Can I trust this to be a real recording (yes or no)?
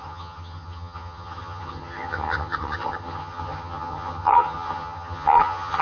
no